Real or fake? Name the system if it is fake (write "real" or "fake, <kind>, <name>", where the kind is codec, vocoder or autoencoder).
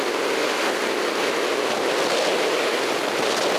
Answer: real